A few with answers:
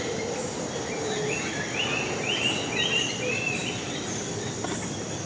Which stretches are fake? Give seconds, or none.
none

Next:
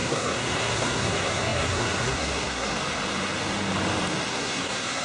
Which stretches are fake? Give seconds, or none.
0.0-2.7 (codec, SNAC); 4.3-5.0